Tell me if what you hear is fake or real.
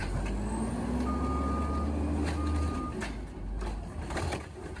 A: real